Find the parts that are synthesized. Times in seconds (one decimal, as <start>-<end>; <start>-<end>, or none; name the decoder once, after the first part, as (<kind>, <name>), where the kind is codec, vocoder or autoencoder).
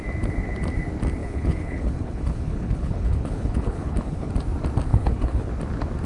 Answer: 1.2-4.3 (codec, HILCodec); 4.9-5.5